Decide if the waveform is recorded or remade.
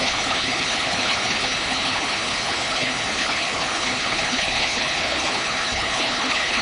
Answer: remade